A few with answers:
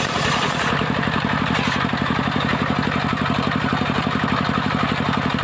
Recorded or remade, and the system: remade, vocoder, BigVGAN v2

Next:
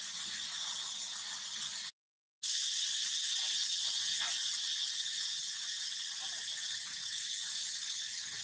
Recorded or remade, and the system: recorded